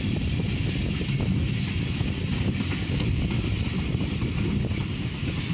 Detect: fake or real fake